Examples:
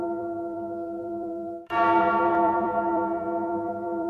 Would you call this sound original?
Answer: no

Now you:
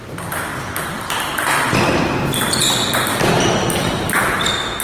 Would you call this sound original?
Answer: no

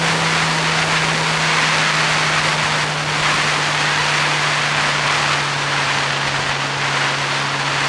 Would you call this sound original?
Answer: yes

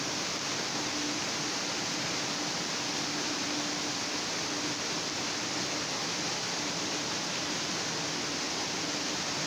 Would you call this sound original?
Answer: yes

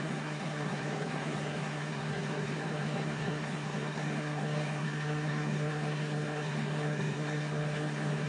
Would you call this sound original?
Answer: no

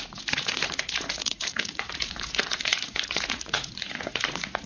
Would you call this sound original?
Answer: no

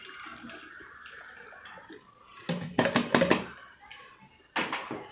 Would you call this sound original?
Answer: yes